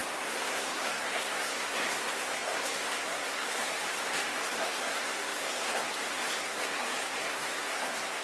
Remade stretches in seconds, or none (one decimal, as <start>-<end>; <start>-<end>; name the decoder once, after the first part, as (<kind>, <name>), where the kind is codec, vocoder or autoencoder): 0.0-8.2 (codec, SNAC)